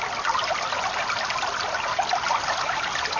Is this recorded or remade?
recorded